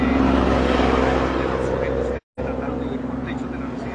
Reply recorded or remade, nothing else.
recorded